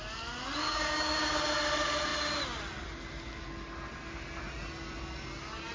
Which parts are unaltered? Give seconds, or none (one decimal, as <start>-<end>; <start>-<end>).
0.0-0.6; 1.3-5.7